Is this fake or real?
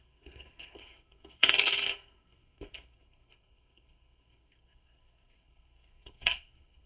fake